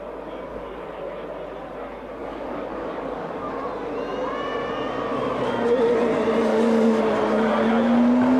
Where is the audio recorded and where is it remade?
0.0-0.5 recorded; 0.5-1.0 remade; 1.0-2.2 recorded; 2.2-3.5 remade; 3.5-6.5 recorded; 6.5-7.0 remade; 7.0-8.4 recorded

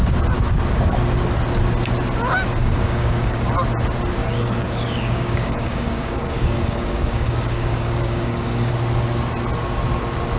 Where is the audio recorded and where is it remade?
0.0-2.6 recorded; 2.6-3.5 remade; 3.5-4.2 recorded; 4.2-8.7 remade; 8.7-10.4 recorded

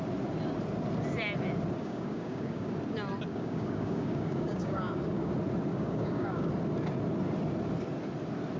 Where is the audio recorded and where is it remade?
0.0-1.8 recorded; 1.8-2.7 remade; 2.7-3.3 recorded; 3.3-5.3 remade; 5.3-5.7 recorded; 5.7-6.5 remade; 6.5-8.6 recorded

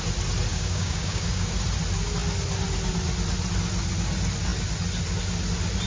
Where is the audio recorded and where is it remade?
0.0-0.5 recorded; 0.5-1.5 remade; 1.5-5.9 recorded

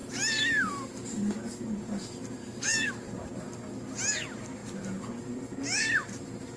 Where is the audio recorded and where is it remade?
0.0-2.4 recorded; 2.4-2.9 remade; 2.9-6.6 recorded

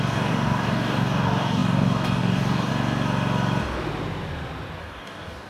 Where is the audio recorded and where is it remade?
0.0-2.7 remade; 2.7-4.8 recorded; 4.8-5.5 remade